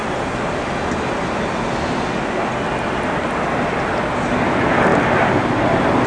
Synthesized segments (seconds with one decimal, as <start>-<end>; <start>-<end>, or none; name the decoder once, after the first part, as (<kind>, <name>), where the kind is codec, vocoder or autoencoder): 0.0-0.6 (vocoder, BigVGAN v2); 4.9-5.6